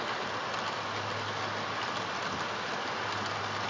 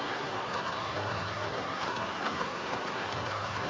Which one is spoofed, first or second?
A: second